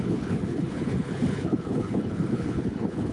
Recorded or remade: remade